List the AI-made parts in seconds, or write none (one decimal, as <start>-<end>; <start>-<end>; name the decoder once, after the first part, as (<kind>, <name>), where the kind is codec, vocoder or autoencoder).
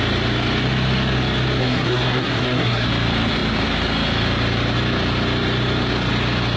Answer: 1.6-2.9 (codec, SNAC)